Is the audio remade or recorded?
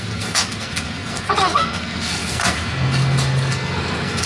remade